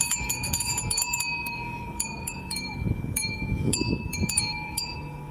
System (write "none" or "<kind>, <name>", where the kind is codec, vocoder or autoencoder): codec, DAC